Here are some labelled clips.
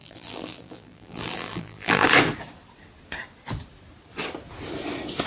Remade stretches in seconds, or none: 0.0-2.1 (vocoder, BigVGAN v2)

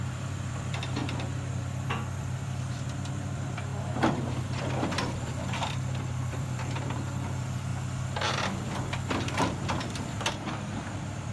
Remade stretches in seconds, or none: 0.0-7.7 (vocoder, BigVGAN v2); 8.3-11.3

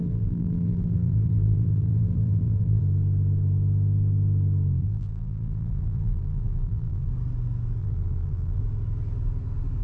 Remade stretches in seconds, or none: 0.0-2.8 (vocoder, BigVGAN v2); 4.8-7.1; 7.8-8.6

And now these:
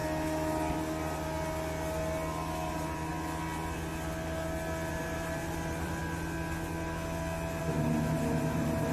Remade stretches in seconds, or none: 2.7-3.1 (vocoder, BigVGAN v2); 4.9-6.0; 7.6-8.9

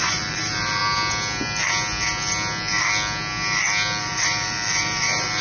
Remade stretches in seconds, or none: 0.0-0.8 (vocoder, BigVGAN v2); 4.0-5.4

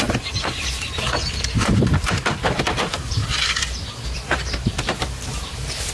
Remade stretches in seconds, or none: 0.0-3.2 (vocoder, BigVGAN v2); 3.9-5.9